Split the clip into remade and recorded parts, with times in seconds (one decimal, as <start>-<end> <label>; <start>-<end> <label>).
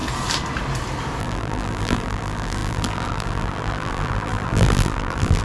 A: 0.0-1.2 recorded; 1.2-5.4 remade